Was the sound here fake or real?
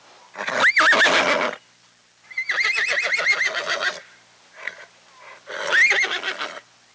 real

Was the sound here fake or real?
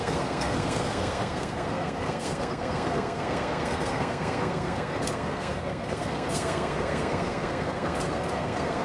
fake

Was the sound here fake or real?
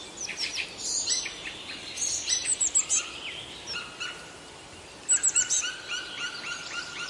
fake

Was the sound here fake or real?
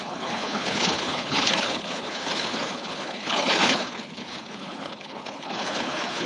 fake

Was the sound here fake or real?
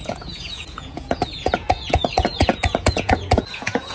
fake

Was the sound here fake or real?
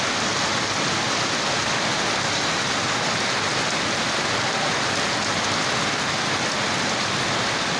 real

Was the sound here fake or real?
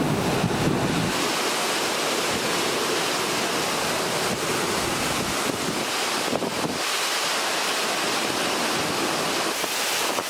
real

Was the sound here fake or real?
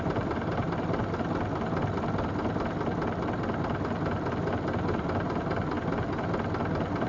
real